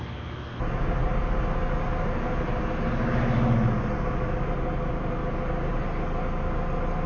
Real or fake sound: real